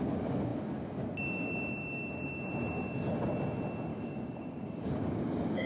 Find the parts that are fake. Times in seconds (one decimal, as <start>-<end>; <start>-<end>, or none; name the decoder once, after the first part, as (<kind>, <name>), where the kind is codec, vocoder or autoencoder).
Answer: 3.9-5.7 (codec, DAC)